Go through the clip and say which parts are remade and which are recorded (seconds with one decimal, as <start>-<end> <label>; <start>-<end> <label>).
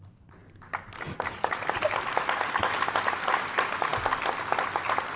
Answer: 0.0-5.2 recorded